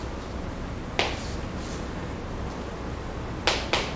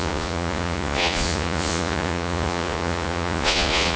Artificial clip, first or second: second